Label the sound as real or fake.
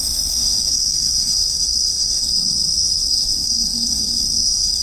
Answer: fake